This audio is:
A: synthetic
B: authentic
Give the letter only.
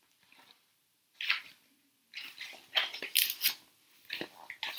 B